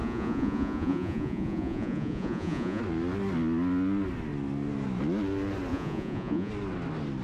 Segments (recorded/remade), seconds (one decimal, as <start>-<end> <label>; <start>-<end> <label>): 0.0-2.8 remade; 2.8-5.7 recorded; 5.7-6.5 remade; 6.5-7.2 recorded